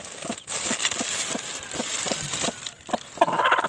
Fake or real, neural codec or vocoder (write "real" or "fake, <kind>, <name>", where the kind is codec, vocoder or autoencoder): real